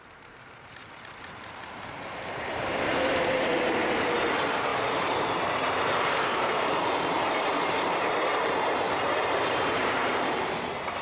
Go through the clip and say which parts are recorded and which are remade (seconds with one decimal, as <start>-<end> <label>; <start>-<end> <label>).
0.0-11.0 remade